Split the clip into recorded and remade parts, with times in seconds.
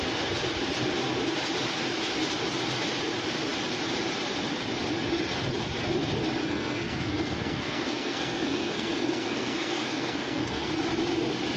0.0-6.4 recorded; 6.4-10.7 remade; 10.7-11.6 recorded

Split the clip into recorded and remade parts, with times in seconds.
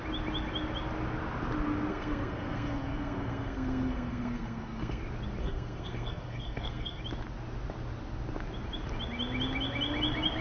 0.0-1.9 recorded; 1.9-5.0 remade; 5.0-5.4 recorded; 5.4-7.0 remade; 7.0-10.4 recorded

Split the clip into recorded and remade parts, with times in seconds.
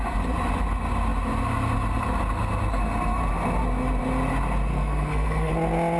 0.0-4.7 recorded; 4.7-5.5 remade; 5.5-6.0 recorded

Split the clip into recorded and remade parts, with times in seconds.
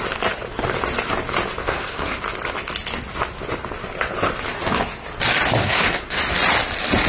0.0-1.6 recorded; 1.6-2.2 remade; 2.2-5.6 recorded; 5.6-6.2 remade; 6.2-7.1 recorded